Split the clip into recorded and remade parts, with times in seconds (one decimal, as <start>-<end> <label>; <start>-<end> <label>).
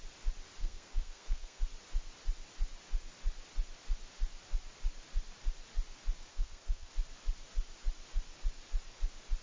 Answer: 0.0-0.6 recorded; 0.6-1.6 remade; 1.6-6.3 recorded; 6.3-6.9 remade; 6.9-9.4 recorded